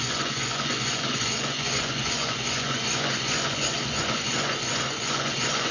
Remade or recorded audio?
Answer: remade